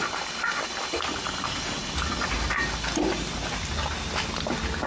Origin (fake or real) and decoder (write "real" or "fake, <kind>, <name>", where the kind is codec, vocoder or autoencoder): real